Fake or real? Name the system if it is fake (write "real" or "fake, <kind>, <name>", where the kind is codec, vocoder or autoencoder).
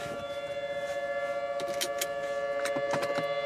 real